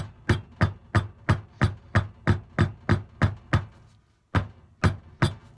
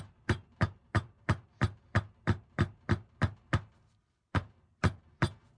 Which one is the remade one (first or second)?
second